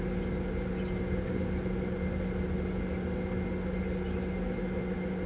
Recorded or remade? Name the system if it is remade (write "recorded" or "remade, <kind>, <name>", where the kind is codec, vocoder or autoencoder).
recorded